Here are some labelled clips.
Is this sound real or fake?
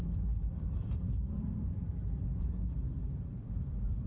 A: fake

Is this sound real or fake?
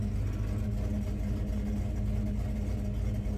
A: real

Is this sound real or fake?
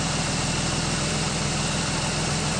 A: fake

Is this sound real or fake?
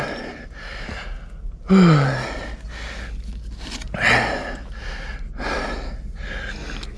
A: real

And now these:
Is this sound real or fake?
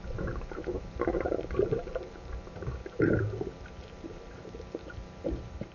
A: fake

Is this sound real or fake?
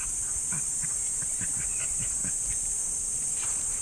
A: fake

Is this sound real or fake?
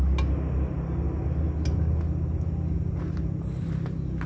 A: real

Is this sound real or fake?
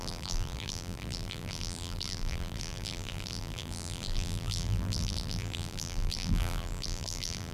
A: fake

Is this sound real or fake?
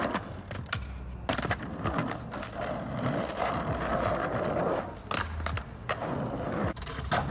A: real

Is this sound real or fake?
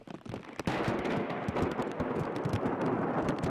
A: real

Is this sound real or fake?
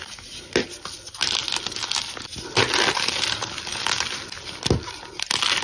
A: real